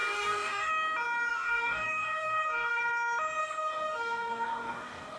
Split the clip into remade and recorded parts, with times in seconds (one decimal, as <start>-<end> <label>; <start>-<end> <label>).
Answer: 0.0-0.7 remade; 0.7-1.3 recorded; 1.3-2.8 remade; 2.8-3.4 recorded; 3.4-5.2 remade